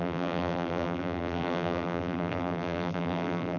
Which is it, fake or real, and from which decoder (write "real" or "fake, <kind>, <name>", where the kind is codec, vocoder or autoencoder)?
fake, vocoder, BigVGAN v2